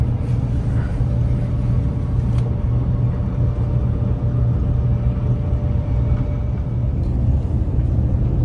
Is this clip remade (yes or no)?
no